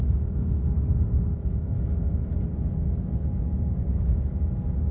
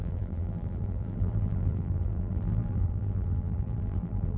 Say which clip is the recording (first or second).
first